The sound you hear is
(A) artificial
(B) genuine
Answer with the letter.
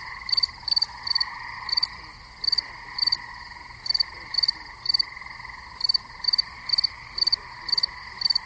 B